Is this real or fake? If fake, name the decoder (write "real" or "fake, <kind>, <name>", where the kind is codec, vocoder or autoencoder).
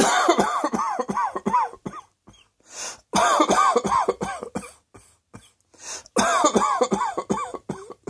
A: real